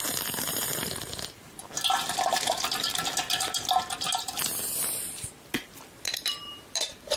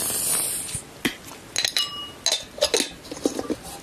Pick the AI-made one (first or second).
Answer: first